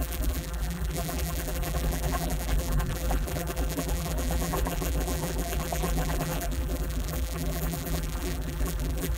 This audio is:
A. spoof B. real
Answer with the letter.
A